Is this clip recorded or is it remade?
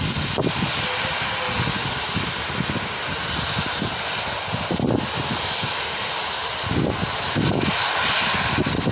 recorded